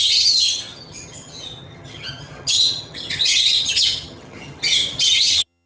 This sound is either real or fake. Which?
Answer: fake